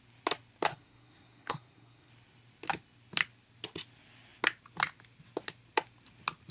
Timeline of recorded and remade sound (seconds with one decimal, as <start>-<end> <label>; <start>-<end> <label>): 0.0-0.7 recorded; 0.7-2.1 remade; 2.1-6.5 recorded